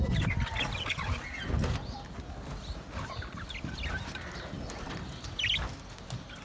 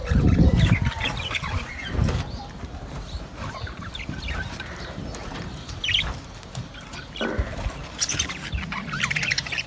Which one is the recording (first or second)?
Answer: first